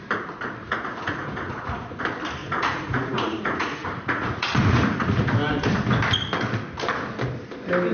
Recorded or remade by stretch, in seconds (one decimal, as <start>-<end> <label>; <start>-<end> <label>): 0.0-0.6 recorded; 0.6-2.0 remade; 2.0-2.4 recorded; 2.4-5.3 remade; 5.3-7.9 recorded